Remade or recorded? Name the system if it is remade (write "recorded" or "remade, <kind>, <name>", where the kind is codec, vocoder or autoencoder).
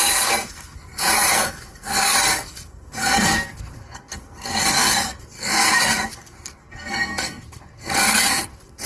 remade, codec, SNAC